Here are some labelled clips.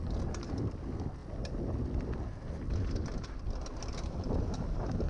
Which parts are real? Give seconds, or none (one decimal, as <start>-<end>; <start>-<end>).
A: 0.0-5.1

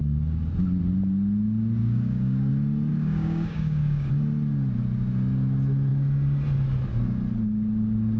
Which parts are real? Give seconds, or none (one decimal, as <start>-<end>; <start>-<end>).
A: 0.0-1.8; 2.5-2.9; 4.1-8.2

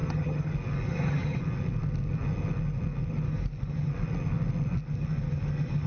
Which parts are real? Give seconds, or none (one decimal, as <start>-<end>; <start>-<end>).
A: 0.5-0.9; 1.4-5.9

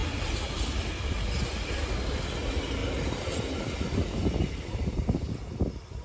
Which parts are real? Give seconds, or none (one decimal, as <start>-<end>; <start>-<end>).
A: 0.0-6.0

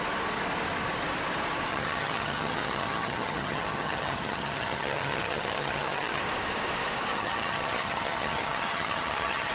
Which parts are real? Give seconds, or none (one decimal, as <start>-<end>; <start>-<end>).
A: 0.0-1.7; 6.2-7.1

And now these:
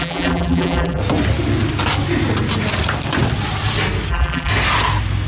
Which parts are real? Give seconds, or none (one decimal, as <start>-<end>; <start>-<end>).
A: 1.0-4.1; 4.5-5.3